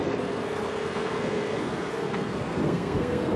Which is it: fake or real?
fake